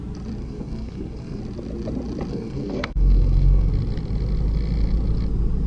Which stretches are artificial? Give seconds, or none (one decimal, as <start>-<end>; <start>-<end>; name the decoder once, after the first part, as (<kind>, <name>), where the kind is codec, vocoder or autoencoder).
0.4-1.4 (codec, SNAC); 2.3-3.7